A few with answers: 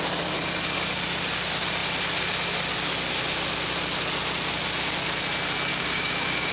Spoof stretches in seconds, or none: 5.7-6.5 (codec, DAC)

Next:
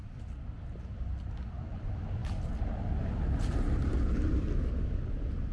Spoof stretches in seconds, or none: none

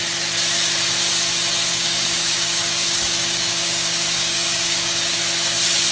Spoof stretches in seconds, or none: 1.7-5.2 (codec, DAC)

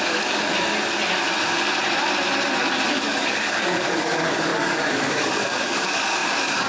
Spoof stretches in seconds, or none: 0.0-0.7 (codec, DAC); 2.9-6.7

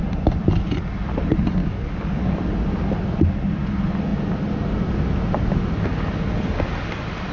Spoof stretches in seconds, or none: 1.6-2.4 (codec, DAC)